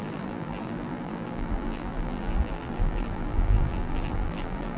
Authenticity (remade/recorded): remade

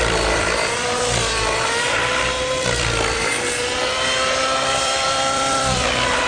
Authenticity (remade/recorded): remade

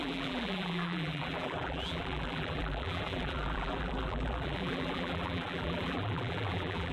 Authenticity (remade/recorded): remade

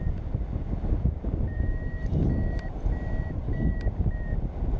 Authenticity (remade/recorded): recorded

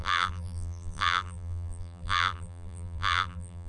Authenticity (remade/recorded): remade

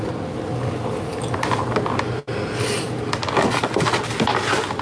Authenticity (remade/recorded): recorded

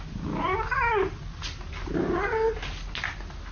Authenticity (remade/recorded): recorded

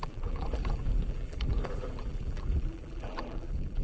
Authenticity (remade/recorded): remade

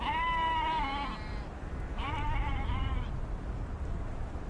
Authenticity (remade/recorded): remade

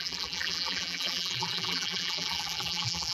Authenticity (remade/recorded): remade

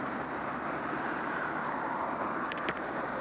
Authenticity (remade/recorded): remade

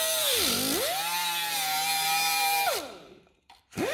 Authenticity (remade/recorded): remade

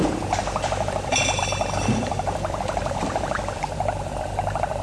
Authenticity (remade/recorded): remade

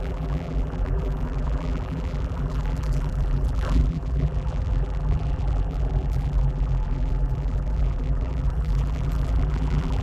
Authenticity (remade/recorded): remade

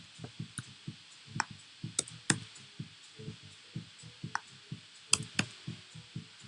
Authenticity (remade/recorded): recorded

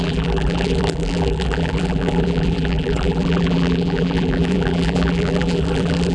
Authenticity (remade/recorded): remade